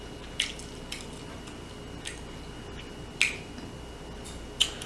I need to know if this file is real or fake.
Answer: real